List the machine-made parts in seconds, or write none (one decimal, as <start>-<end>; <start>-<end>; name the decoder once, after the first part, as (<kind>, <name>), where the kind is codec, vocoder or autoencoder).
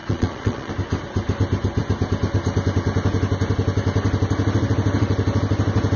0.0-0.7 (vocoder, Vocos)